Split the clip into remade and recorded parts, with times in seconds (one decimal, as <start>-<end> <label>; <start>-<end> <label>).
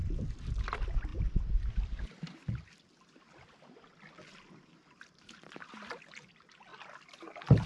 0.0-0.5 remade; 0.5-7.7 recorded